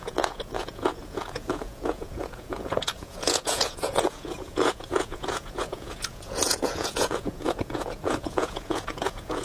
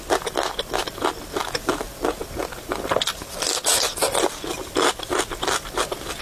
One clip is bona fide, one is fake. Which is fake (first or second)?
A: first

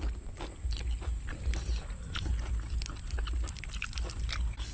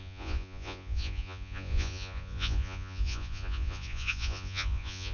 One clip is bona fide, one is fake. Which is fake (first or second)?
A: second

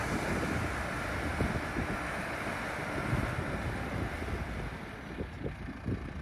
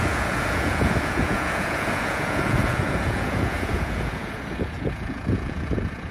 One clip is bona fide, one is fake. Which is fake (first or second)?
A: second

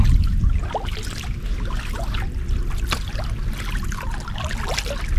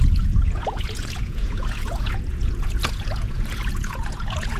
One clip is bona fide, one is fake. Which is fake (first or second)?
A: second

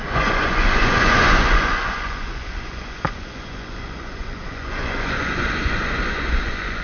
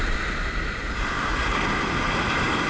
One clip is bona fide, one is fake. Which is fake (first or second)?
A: first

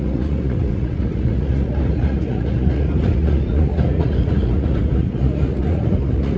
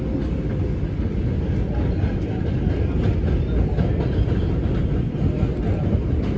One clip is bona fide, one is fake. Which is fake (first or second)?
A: first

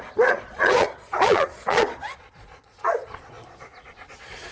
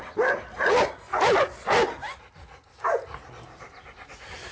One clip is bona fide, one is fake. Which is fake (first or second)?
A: first